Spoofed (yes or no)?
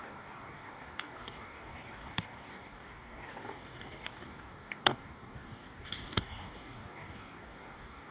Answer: yes